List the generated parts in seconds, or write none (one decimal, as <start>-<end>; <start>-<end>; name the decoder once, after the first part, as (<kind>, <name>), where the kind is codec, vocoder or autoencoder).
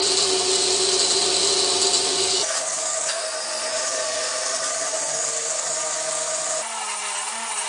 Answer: 2.1-3.2 (codec, DAC); 3.7-6.3